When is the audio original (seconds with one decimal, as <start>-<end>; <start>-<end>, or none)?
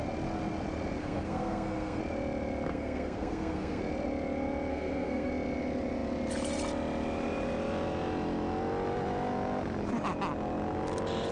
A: 0.0-1.0; 2.0-2.7; 3.8-4.7; 5.3-11.3